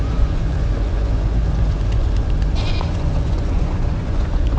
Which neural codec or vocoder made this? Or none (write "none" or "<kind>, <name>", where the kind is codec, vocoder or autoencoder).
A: vocoder, Vocos